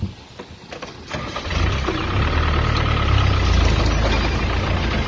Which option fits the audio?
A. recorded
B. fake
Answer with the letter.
A